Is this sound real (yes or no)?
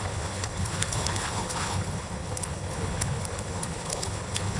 no